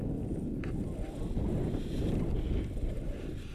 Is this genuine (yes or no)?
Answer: yes